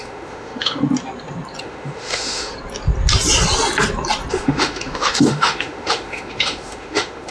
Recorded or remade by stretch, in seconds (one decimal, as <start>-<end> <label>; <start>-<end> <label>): 0.0-0.8 remade; 0.8-1.6 recorded; 1.6-2.5 remade; 2.5-4.3 recorded; 4.3-7.3 remade